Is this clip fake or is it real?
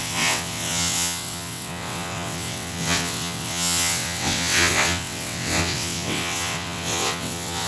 fake